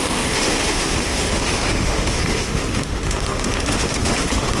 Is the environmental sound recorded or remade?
remade